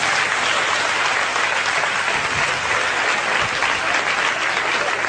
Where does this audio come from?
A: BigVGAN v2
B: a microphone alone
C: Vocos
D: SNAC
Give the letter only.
B